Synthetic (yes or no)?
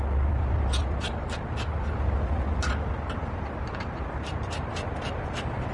no